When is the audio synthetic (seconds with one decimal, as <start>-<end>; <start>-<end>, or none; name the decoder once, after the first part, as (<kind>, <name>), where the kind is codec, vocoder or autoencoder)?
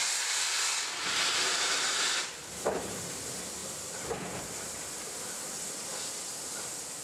none